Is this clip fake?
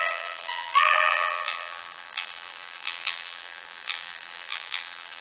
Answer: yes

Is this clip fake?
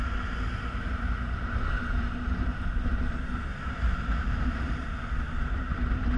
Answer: yes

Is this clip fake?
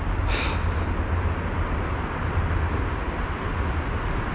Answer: no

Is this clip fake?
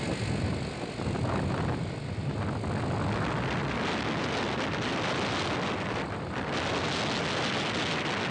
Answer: no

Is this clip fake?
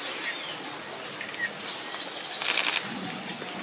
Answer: no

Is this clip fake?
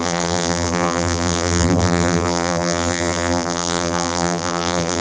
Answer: yes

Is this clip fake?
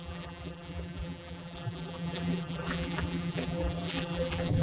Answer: yes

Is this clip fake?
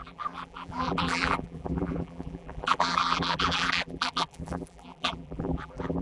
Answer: yes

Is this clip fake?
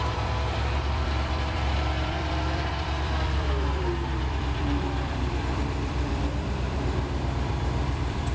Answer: yes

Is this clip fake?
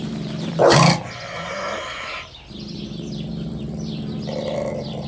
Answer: no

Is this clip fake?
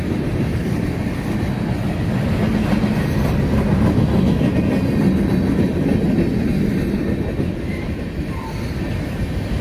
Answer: no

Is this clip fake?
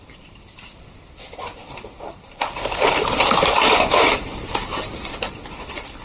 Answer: yes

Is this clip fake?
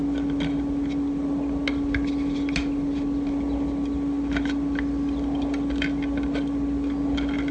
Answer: no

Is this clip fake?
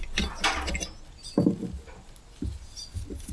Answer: no